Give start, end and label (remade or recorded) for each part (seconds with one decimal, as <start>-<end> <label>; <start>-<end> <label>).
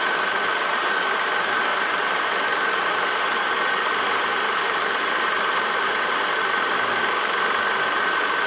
0.0-8.5 recorded